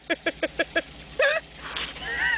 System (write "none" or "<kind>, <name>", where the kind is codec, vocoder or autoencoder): none